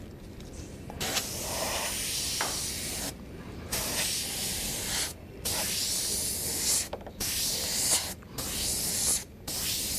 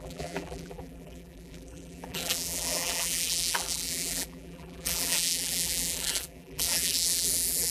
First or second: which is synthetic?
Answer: second